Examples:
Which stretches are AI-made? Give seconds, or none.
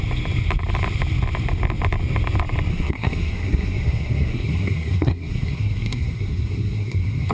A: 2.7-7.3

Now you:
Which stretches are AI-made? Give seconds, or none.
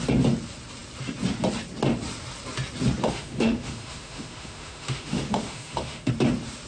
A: 3.0-6.1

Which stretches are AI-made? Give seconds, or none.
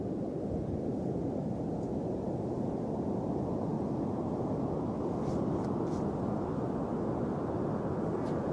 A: none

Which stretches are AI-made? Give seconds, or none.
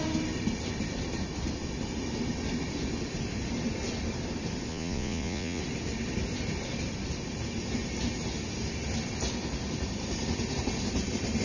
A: 4.7-5.6